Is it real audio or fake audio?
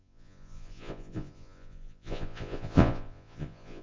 fake